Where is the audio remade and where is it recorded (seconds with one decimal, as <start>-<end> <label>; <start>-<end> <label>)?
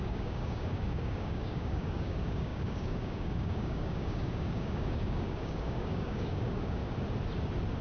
0.0-6.8 remade; 6.8-7.8 recorded